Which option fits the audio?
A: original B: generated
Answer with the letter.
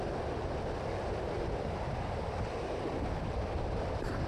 B